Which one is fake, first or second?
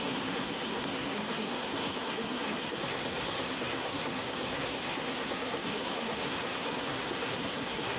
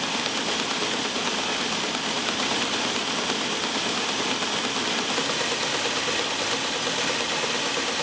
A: first